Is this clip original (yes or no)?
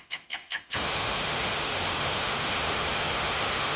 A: no